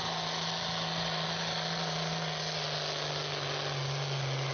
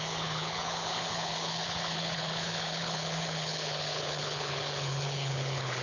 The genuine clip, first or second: first